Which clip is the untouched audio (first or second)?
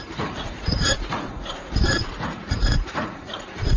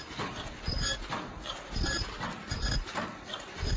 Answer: second